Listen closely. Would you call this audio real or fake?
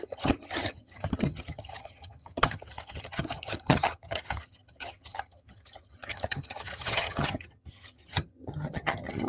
fake